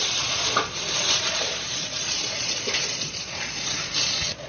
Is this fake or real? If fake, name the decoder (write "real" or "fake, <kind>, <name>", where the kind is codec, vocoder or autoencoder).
fake, vocoder, Vocos